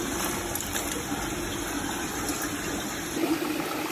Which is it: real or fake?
real